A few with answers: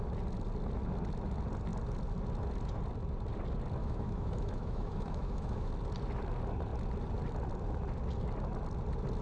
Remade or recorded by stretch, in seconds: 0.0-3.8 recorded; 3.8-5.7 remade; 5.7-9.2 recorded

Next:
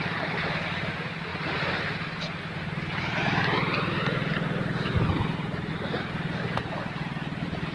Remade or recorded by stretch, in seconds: 0.0-7.7 recorded

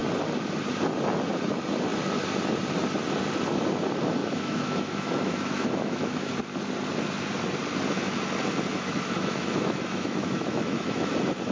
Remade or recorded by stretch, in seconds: 0.0-4.2 recorded; 4.2-6.3 remade; 6.3-8.7 recorded; 8.7-11.1 remade; 11.1-11.5 recorded

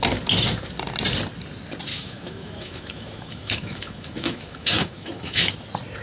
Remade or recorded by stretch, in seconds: 0.0-1.9 recorded; 1.9-5.5 remade; 5.5-6.0 recorded

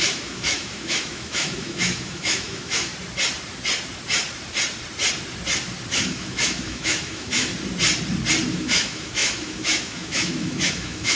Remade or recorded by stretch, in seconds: 0.0-2.9 remade; 2.9-5.9 recorded; 5.9-7.5 remade; 7.5-8.5 recorded; 8.5-11.2 remade

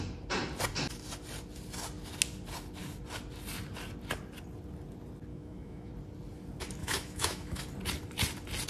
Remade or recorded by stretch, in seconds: 0.0-5.3 recorded; 5.3-5.9 remade; 5.9-6.8 recorded; 6.8-7.6 remade; 7.6-8.7 recorded

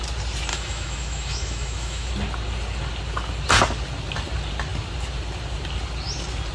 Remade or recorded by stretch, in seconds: 0.0-0.5 recorded; 0.5-2.1 remade; 2.1-6.5 recorded